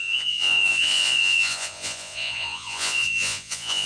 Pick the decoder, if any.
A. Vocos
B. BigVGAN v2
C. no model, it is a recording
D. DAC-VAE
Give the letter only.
A